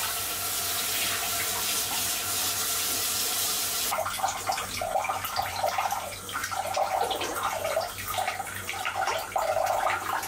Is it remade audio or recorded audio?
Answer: recorded